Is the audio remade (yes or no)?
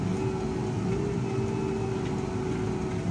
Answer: no